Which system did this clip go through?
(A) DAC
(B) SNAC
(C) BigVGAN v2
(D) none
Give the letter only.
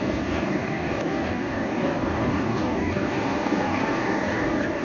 A